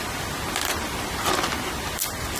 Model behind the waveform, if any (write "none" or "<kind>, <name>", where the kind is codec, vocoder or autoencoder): vocoder, BigVGAN v2